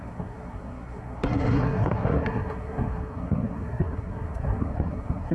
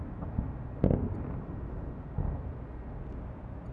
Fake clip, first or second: first